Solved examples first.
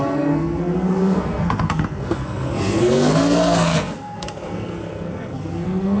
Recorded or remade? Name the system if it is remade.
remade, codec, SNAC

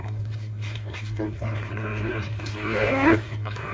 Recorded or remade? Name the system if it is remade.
remade, codec, SNAC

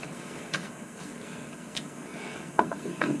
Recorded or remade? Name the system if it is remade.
remade, codec, SNAC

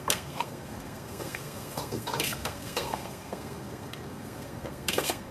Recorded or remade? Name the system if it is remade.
remade, codec, SNAC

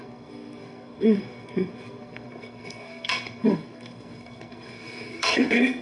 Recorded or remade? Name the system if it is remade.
remade, codec, SNAC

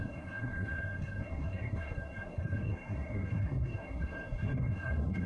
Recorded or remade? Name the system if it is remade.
remade, codec, SNAC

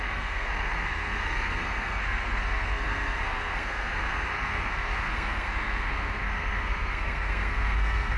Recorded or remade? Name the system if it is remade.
remade, codec, SNAC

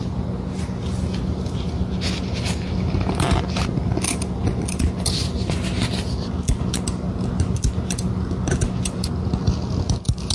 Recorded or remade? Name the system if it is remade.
recorded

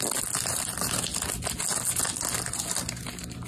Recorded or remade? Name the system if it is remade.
recorded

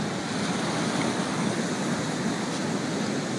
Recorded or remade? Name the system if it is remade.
recorded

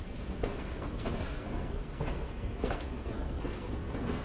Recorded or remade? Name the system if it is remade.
remade, codec, SNAC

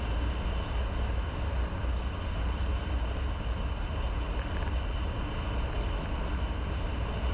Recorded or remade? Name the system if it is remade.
recorded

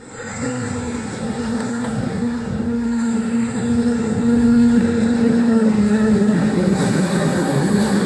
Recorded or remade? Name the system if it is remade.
remade, codec, SNAC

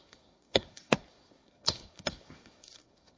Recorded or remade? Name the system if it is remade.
remade, codec, SNAC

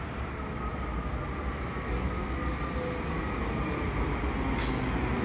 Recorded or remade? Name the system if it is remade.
recorded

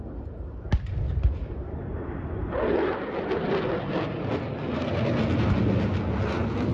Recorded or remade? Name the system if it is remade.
recorded